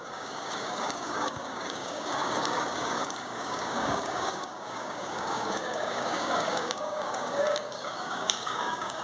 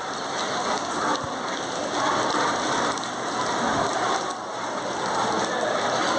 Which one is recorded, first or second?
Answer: second